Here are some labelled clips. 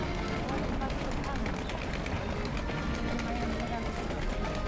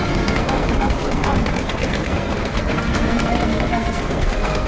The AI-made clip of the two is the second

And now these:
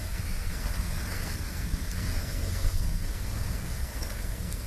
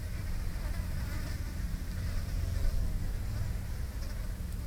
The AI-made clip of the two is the first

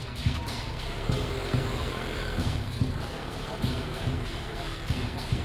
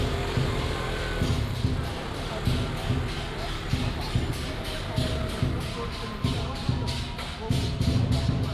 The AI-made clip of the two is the first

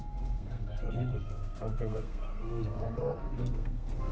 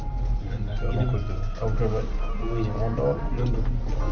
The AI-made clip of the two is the first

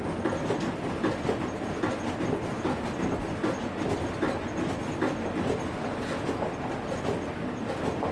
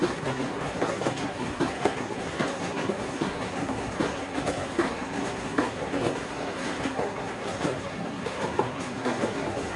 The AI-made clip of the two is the second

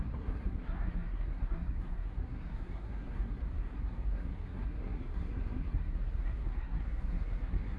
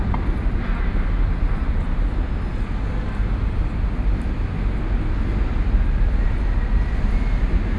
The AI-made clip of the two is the first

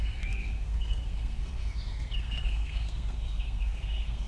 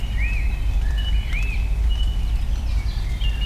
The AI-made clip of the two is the first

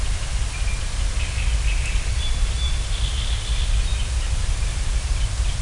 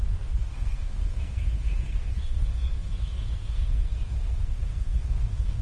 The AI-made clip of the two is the second